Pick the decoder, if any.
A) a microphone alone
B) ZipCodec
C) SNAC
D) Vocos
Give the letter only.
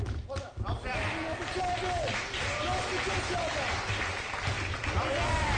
A